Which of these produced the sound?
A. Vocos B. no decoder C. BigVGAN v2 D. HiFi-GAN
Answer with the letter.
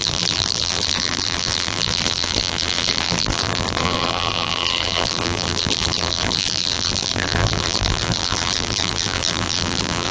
C